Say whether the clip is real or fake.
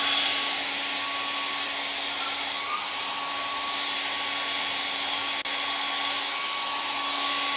real